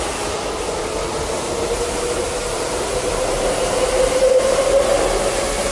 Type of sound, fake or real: real